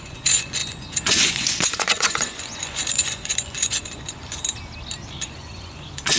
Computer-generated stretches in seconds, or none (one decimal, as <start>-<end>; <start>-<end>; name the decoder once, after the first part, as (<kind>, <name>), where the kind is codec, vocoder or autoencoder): 0.0-4.4 (vocoder, Vocos); 5.1-6.2